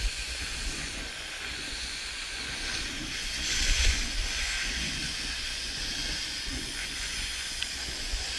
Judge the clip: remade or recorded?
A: remade